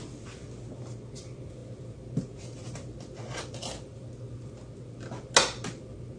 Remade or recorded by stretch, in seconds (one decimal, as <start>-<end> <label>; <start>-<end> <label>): 0.0-6.2 recorded